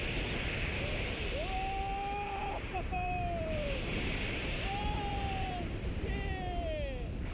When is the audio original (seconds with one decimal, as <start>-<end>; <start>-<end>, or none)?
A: 0.0-2.4; 6.1-7.3